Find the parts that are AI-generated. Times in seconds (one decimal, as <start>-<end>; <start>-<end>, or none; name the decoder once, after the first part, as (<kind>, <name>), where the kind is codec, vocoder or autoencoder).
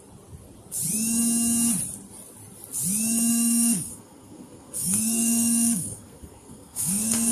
3.3-7.3 (codec, SNAC)